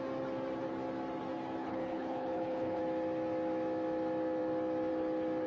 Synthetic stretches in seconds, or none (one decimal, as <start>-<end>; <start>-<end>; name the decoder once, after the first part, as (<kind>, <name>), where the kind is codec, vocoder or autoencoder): 1.6-2.8 (codec, HILCodec)